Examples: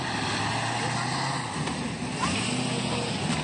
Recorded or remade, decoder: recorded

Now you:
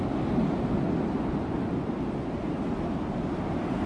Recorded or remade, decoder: recorded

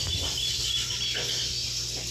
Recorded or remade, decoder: recorded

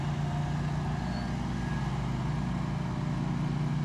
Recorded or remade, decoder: recorded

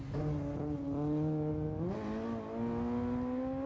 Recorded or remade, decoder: recorded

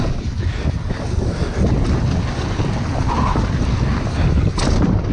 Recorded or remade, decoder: recorded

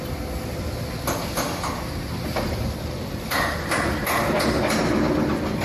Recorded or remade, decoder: recorded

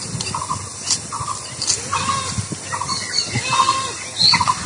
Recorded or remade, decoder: recorded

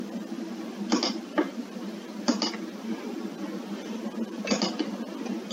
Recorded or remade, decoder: recorded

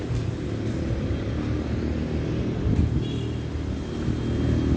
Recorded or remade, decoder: recorded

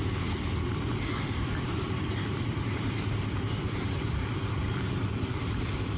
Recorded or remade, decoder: remade, vocoder, BigVGAN v2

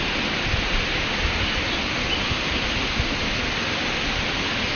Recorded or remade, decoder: recorded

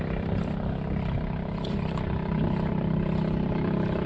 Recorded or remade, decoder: remade, vocoder, BigVGAN v2